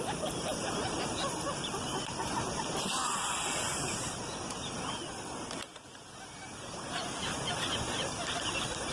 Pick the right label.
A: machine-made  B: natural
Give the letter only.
B